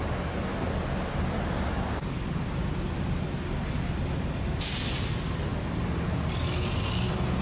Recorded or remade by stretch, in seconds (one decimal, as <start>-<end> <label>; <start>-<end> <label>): 0.0-7.4 recorded